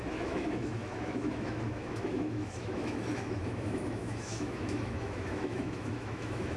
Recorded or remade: remade